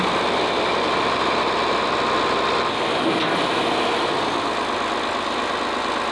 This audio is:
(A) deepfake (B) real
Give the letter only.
B